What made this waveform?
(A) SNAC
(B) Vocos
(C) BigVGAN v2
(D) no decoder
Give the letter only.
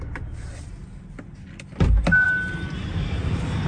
D